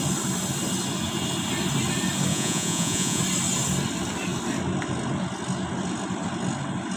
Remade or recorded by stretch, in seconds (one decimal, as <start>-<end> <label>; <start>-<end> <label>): 0.0-2.3 recorded; 2.3-3.2 remade; 3.2-7.0 recorded